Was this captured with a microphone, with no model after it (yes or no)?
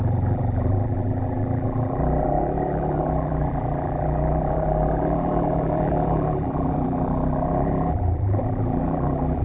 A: no